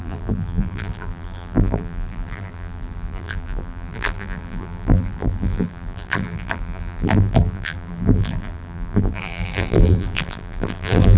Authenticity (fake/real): fake